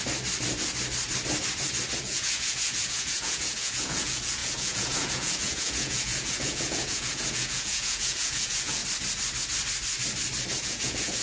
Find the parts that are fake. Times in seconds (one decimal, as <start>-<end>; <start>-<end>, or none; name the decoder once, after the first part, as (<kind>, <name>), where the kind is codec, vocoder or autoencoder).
2.0-8.8 (vocoder, Vocos); 10.6-11.2